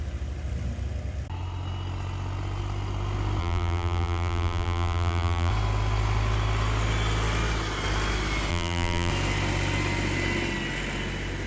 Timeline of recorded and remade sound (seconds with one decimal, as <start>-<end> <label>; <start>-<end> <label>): 0.0-3.4 recorded; 3.4-5.5 remade; 5.5-8.5 recorded; 8.5-9.1 remade; 9.1-11.5 recorded